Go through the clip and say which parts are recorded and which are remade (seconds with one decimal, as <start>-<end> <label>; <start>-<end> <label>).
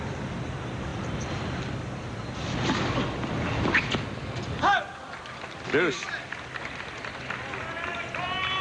0.0-8.6 recorded